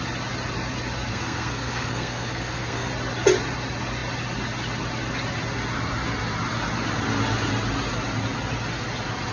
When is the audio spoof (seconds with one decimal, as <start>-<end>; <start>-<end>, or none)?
1.1-2.9